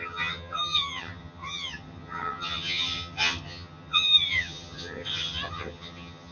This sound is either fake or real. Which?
fake